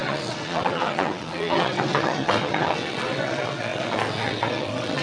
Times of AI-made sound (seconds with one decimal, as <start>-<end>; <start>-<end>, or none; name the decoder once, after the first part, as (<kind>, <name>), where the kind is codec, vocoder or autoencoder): 0.0-5.0 (vocoder, WaveNeXt)